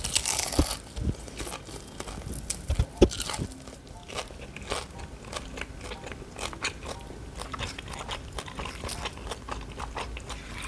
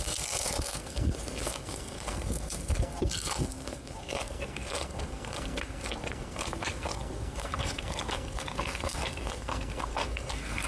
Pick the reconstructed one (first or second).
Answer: second